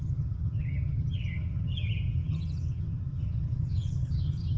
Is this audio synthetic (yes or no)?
yes